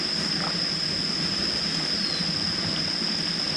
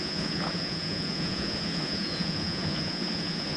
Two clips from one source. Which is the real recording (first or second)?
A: first